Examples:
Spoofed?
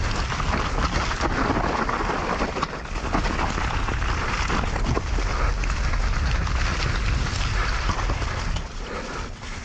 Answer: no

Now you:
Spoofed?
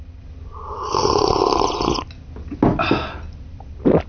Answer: no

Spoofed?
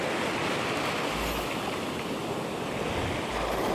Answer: no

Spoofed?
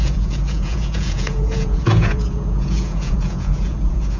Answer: yes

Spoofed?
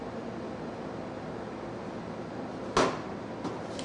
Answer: no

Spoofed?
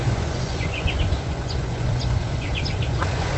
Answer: yes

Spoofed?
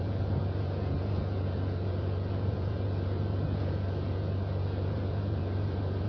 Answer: yes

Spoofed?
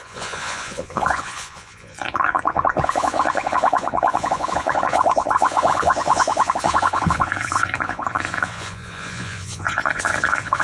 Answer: yes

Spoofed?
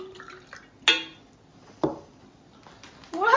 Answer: no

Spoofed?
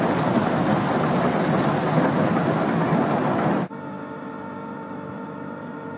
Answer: no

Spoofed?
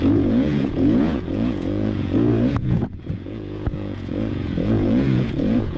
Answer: yes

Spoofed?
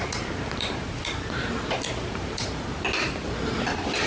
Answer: no